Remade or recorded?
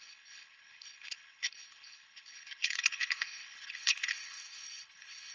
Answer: remade